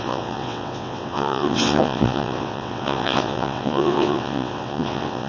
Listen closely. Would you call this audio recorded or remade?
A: remade